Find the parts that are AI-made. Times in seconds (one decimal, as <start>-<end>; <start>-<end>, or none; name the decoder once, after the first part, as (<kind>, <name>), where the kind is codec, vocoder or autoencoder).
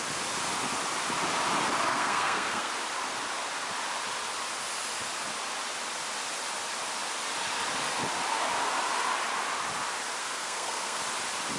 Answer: 1.9-2.7 (codec, SNAC); 10.2-11.0